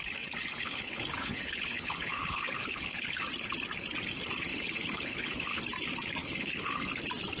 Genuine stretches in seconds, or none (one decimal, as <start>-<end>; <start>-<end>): 0.0-0.5; 3.2-4.5; 5.6-6.2; 6.9-7.4